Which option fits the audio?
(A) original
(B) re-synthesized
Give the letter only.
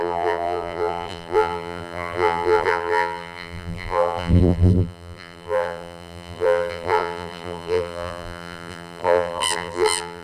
B